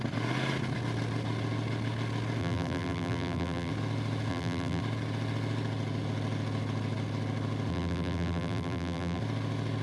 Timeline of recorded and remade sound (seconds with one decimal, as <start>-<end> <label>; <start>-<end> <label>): 0.0-2.4 recorded; 2.4-3.7 remade; 3.7-4.3 recorded; 4.3-4.8 remade; 4.8-7.7 recorded; 7.7-9.2 remade; 9.2-9.8 recorded